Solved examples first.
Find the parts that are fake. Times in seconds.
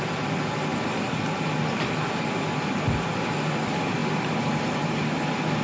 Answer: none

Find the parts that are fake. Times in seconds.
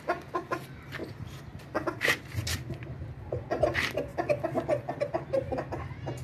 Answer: none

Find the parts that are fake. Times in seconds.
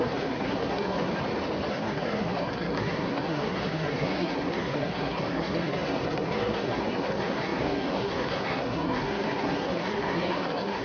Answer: 0.0-1.1 (codec, SNAC); 1.7-10.8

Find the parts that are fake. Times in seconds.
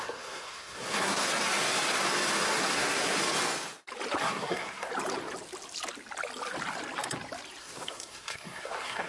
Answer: 0.0-1.3 (codec, SNAC); 2.6-3.2; 4.2-4.9; 7.6-9.1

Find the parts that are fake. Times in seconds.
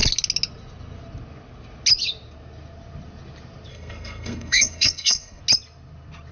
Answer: 3.7-5.4 (codec, SNAC)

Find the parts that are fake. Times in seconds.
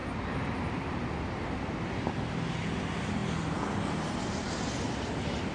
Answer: none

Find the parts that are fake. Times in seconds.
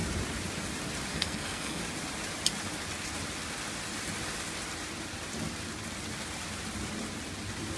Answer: 1.1-1.8 (codec, SNAC)